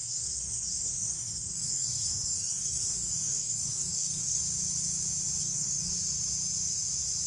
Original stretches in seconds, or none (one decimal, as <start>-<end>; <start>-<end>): 4.4-5.4; 5.9-7.3